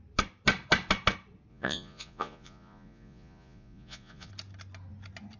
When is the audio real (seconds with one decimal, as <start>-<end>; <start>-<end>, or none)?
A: 0.0-1.5; 4.3-5.4

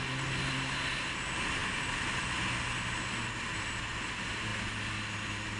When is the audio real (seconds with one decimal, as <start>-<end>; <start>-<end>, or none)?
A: 0.0-5.6

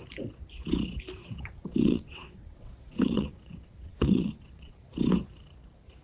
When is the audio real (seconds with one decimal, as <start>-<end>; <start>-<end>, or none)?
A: 0.0-1.2; 4.8-6.0

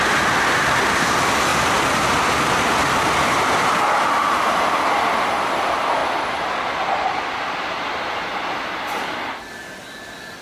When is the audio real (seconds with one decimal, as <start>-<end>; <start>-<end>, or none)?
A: 0.0-10.4

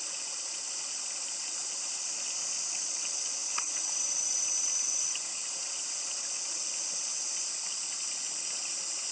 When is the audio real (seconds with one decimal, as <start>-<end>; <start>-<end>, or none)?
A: 0.0-9.1

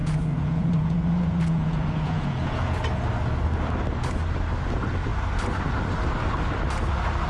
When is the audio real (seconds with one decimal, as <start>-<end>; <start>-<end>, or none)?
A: 2.8-7.3

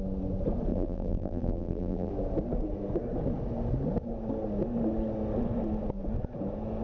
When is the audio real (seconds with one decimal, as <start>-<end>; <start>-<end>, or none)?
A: 0.0-0.7; 2.1-6.8

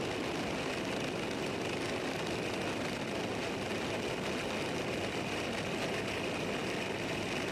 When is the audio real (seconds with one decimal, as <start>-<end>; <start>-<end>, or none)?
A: 0.0-7.5